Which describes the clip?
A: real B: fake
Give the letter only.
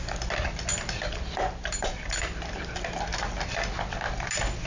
A